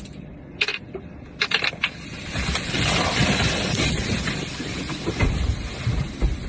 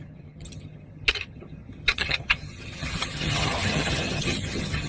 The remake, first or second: second